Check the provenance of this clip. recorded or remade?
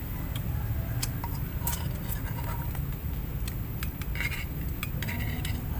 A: recorded